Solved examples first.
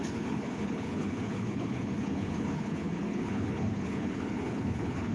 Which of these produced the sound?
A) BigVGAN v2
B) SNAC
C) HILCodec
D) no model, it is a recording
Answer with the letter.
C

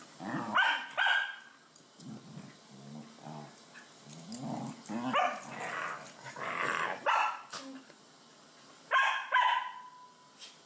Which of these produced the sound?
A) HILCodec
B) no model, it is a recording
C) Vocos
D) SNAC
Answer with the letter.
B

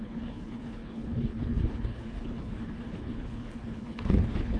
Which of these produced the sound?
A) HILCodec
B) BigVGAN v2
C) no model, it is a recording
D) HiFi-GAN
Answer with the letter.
A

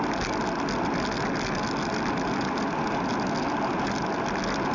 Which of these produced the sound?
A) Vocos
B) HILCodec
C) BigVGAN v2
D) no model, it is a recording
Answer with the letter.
D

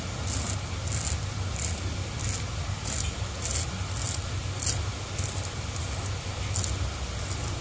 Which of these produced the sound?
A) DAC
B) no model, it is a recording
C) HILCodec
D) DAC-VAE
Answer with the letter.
B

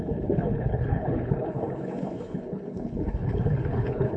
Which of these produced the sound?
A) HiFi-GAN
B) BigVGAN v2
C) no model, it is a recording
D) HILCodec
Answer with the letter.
D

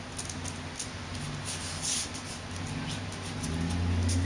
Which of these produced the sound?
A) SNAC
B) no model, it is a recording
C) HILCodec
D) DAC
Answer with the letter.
B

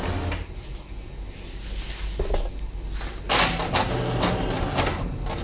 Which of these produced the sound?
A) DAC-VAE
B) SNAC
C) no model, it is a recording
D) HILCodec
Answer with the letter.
C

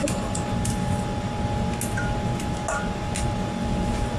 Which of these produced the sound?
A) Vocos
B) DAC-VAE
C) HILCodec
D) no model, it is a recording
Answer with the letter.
D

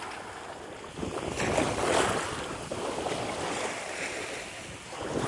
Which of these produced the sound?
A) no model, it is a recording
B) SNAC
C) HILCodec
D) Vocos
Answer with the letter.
A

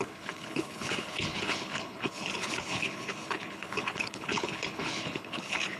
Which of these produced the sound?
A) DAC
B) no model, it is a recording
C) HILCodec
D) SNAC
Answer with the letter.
C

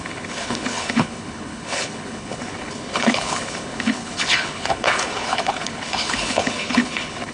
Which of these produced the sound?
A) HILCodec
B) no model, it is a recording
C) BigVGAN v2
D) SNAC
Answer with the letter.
A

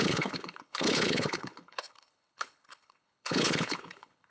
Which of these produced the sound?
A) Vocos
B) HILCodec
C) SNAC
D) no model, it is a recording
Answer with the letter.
B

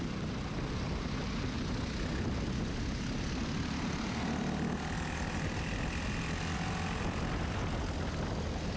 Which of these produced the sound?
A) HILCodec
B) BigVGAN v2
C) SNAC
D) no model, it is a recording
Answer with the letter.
D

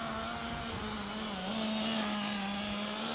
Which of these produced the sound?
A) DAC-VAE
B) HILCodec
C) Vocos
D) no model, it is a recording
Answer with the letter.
D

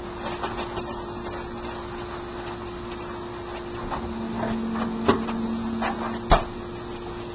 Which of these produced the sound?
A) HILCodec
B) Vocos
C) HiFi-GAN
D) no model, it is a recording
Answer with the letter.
D